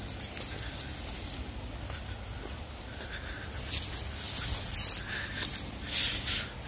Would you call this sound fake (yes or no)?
no